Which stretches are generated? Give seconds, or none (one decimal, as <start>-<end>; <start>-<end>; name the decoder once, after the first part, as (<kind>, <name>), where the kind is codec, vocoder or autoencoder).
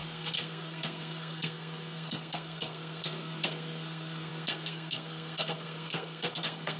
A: 0.0-6.8 (codec, SNAC)